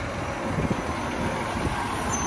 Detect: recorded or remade recorded